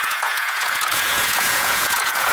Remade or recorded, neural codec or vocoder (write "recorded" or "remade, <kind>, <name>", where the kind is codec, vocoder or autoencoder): remade, vocoder, Vocos